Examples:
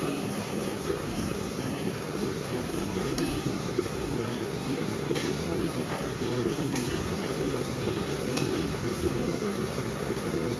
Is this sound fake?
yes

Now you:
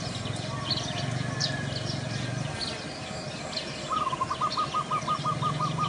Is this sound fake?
no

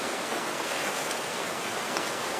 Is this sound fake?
yes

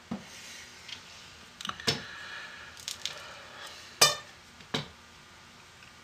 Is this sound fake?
no